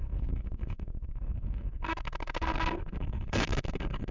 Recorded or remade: remade